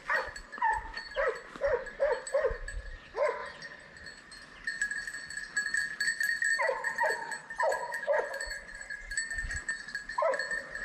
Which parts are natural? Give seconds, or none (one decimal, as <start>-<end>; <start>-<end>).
0.0-0.5; 1.1-7.7; 9.1-10.8